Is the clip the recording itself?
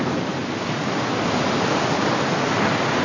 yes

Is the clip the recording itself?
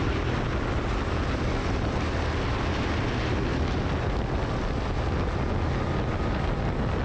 yes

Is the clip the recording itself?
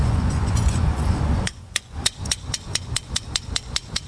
no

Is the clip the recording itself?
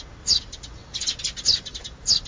yes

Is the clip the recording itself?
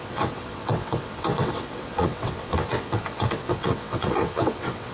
no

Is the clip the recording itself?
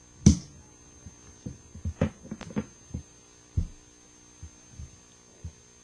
yes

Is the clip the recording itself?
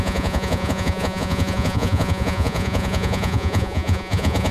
no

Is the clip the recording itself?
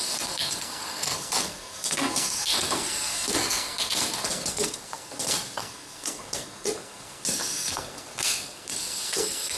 no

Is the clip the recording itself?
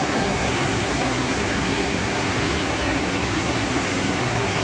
no